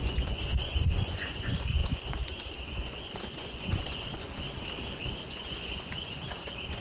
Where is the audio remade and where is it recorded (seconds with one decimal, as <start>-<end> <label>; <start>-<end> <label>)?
0.0-4.3 remade; 4.3-5.0 recorded; 5.0-6.8 remade